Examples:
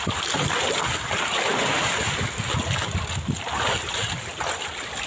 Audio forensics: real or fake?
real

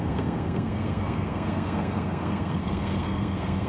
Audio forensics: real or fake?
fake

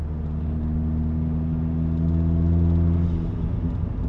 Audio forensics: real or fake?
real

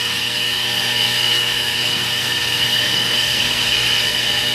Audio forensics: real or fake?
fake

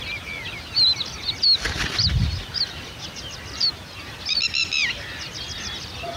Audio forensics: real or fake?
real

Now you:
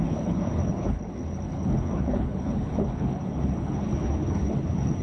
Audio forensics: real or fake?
fake